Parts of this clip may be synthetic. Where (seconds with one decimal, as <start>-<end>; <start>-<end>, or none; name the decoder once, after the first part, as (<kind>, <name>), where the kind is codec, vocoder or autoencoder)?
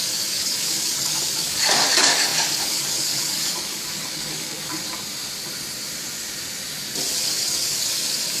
0.0-4.8 (codec, DAC); 7.2-8.4